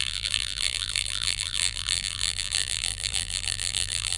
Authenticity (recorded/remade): remade